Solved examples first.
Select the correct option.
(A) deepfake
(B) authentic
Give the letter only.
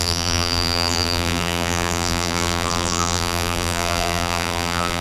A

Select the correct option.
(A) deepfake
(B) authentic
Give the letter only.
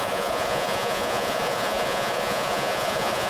A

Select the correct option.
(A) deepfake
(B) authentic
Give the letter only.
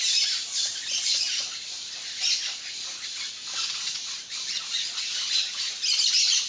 B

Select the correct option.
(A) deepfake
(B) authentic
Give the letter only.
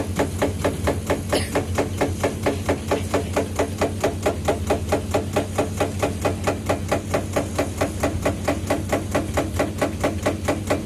B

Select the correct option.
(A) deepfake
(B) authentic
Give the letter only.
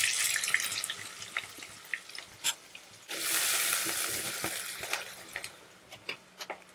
B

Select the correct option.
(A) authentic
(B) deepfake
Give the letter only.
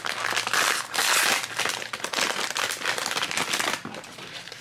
A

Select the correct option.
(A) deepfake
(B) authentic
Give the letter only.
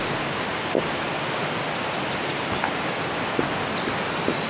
B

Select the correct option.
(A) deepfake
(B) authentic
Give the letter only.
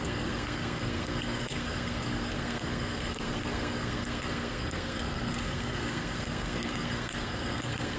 A